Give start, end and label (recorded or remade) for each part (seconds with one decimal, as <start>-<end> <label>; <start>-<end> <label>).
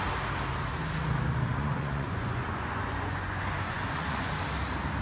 0.0-1.5 recorded; 1.5-4.3 remade; 4.3-5.0 recorded